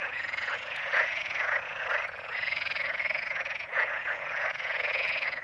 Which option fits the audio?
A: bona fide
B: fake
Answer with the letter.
B